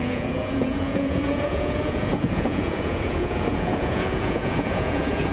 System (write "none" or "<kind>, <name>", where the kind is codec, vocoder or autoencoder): vocoder, Vocos